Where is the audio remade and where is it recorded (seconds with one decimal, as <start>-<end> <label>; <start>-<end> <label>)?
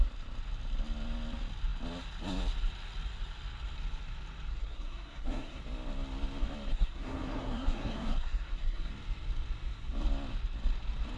0.0-4.5 recorded; 4.5-5.6 remade; 5.6-6.7 recorded; 6.7-8.9 remade; 8.9-11.2 recorded